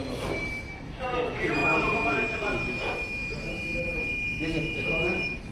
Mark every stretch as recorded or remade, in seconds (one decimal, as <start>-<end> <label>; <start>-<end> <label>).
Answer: 0.0-0.7 recorded; 0.7-5.5 remade